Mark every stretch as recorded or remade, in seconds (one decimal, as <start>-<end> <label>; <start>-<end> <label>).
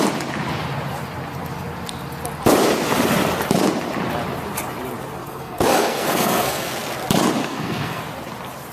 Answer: 0.0-5.2 recorded; 5.2-6.7 remade; 6.7-7.4 recorded; 7.4-8.0 remade; 8.0-8.7 recorded